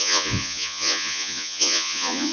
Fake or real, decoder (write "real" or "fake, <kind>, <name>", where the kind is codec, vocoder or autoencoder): fake, vocoder, Vocos